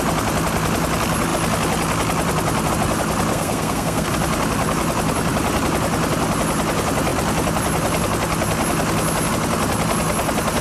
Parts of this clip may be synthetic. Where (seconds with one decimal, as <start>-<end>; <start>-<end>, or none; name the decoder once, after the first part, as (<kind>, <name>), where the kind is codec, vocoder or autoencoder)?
3.3-4.1 (codec, SNAC)